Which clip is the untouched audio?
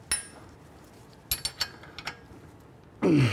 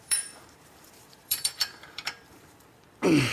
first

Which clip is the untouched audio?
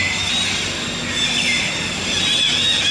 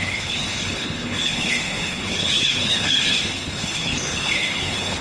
first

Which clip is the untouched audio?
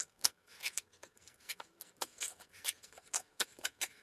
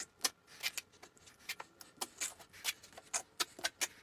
second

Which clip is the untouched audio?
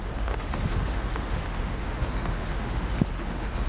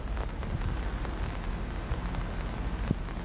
second